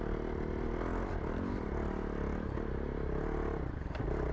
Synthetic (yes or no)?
no